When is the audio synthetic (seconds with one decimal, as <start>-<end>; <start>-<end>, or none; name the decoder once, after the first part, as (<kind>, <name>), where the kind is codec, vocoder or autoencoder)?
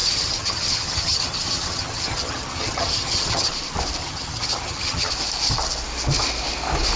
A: 0.0-3.5 (vocoder, HiFi-GAN); 4.0-5.1